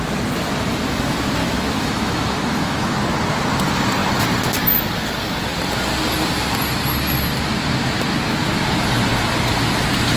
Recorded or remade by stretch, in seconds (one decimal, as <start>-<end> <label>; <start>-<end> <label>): 0.0-1.4 recorded; 1.4-3.0 remade; 3.0-10.2 recorded